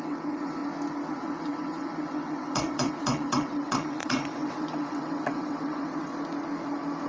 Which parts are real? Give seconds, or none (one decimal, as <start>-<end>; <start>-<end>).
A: 0.6-1.1; 6.1-7.1

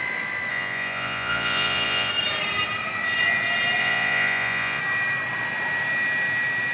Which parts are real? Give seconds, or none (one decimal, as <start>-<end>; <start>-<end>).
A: 0.0-0.5; 2.1-3.8; 4.8-6.7

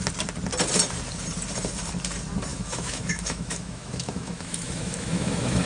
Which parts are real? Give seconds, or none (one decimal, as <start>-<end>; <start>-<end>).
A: 0.0-2.5